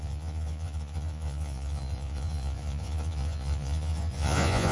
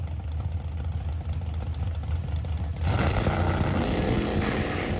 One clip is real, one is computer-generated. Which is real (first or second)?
second